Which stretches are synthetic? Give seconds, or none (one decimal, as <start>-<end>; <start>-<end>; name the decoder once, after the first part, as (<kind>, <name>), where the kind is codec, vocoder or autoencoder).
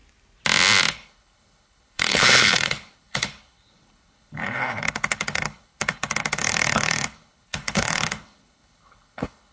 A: 0.9-9.5 (codec, HILCodec)